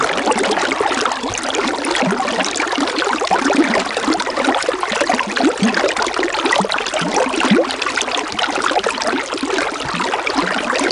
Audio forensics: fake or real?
real